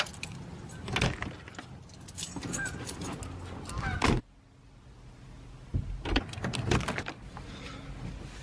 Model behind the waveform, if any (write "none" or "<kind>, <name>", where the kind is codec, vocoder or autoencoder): none